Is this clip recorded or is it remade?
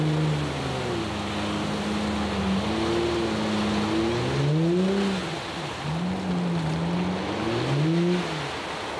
recorded